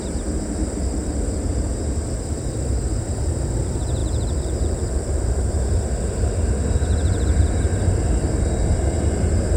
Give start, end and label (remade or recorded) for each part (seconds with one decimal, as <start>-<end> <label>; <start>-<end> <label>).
0.0-4.0 recorded; 4.0-5.5 remade; 5.5-9.6 recorded